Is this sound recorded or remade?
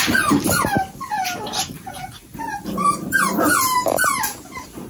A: remade